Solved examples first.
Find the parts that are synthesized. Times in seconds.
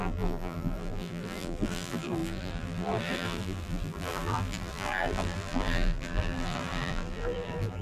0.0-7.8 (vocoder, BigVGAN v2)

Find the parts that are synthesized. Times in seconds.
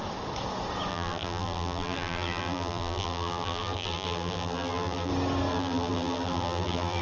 0.9-5.1 (vocoder, BigVGAN v2); 5.5-7.0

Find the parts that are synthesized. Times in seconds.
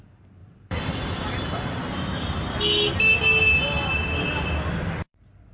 0.0-1.8 (vocoder, BigVGAN v2); 5.0-5.5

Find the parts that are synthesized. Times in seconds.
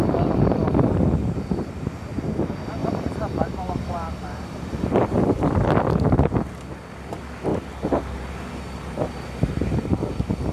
2.8-5.5 (vocoder, BigVGAN v2)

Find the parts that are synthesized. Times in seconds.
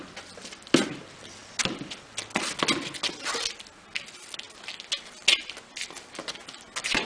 none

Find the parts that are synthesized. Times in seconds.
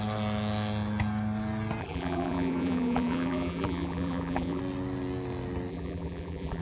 1.8-4.6 (vocoder, BigVGAN v2); 5.7-6.6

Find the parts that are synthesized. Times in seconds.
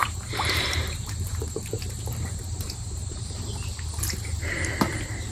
0.0-3.2 (vocoder, BigVGAN v2)